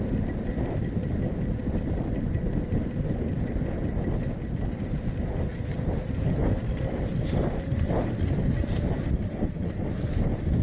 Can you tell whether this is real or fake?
real